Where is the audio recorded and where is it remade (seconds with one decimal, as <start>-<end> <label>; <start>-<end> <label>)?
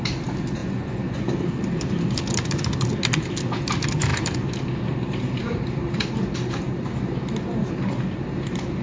0.0-0.6 recorded; 0.6-1.3 remade; 1.3-8.8 recorded